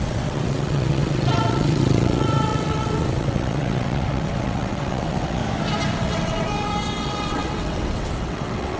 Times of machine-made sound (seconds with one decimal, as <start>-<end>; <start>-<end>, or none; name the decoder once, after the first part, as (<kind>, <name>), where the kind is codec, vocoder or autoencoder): 0.0-5.4 (vocoder, WaveNeXt); 5.9-8.8